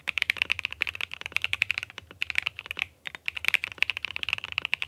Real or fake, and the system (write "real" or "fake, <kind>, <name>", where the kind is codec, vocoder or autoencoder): fake, vocoder, BigVGAN v2